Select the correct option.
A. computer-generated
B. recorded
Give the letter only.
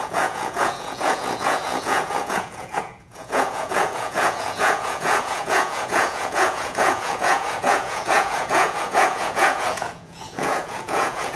A